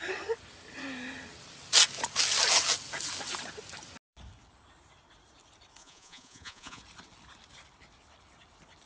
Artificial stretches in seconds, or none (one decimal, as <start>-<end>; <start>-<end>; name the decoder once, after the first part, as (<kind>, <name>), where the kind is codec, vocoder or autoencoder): 5.8-6.8 (vocoder, Vocos)